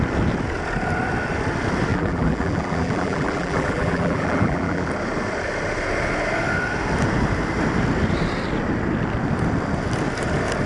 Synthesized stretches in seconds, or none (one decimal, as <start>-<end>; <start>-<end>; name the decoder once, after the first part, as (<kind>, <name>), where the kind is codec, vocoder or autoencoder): 1.9-4.9 (vocoder, BigVGAN v2)